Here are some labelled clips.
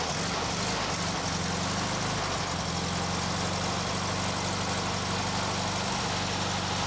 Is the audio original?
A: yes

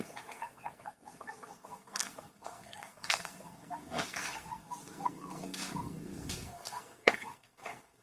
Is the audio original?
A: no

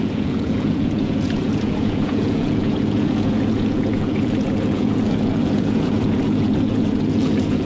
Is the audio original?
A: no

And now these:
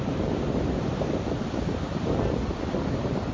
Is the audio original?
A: yes